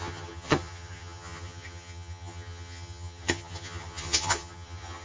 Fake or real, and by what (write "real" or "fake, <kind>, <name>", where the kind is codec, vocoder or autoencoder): fake, vocoder, HiFi-GAN